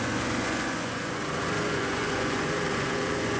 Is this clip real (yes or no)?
no